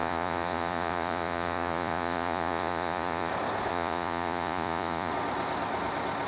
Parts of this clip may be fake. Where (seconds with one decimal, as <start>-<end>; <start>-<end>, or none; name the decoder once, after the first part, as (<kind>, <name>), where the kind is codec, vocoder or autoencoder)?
0.0-3.3 (vocoder, Vocos); 3.7-5.1